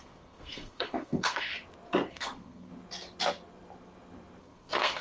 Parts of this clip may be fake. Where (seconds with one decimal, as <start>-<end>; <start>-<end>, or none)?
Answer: 0.0-1.5; 2.1-2.7; 4.4-5.0